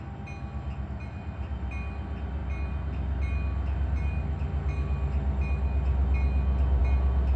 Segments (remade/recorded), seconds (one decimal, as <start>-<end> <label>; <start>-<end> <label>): 0.0-7.4 recorded